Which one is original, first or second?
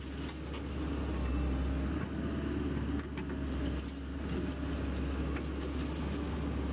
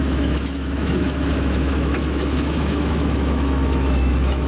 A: first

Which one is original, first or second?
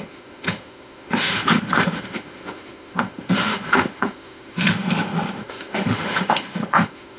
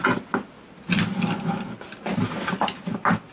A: second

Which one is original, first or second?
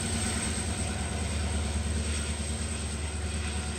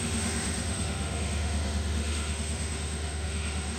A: first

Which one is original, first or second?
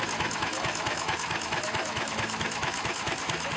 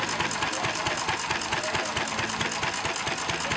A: second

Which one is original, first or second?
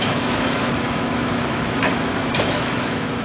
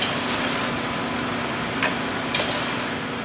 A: second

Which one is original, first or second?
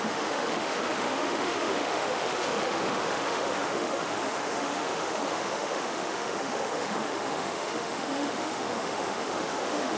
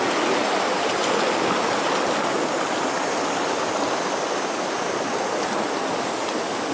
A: second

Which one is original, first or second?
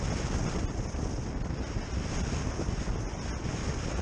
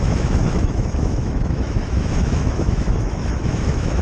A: first